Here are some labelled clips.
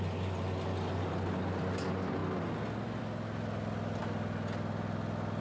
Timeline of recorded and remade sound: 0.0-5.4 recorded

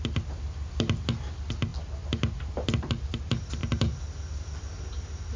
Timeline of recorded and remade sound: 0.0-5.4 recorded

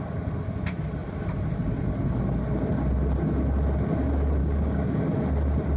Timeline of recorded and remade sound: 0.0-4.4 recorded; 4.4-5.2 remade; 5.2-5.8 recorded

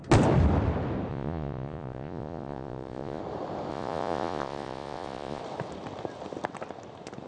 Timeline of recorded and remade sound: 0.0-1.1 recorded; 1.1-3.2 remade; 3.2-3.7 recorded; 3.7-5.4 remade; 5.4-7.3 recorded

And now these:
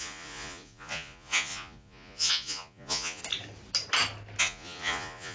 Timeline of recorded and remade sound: 0.0-3.2 remade; 3.2-4.4 recorded; 4.4-5.3 remade

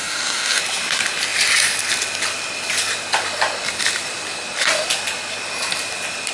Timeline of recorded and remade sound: 0.0-0.6 remade; 0.6-6.3 recorded